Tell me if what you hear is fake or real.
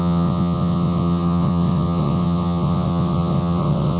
fake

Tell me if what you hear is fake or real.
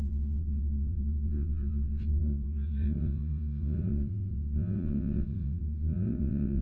fake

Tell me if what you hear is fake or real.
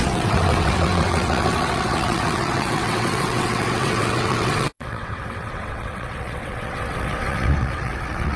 fake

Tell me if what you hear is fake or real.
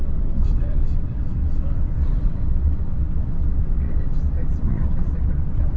fake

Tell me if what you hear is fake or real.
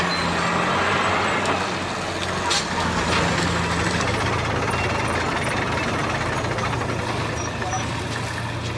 real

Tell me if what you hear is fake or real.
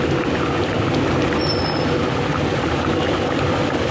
real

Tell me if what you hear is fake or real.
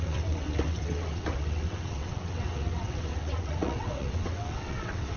fake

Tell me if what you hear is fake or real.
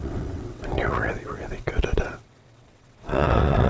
fake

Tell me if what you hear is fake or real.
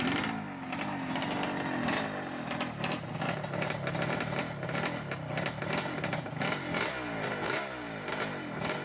real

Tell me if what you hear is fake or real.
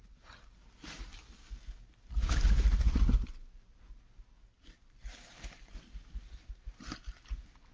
real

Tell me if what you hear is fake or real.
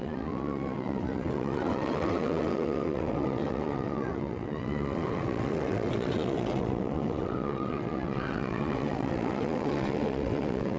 fake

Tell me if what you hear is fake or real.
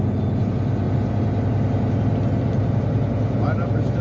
real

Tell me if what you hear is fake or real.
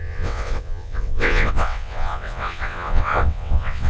fake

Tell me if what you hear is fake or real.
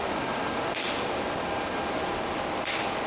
real